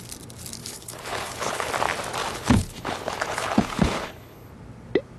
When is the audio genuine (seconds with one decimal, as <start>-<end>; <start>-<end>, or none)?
0.0-0.6; 1.7-2.2; 4.5-5.2